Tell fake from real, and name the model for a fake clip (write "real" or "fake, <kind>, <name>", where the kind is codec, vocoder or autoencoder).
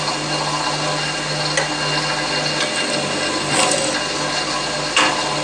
real